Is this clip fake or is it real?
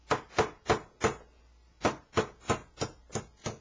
real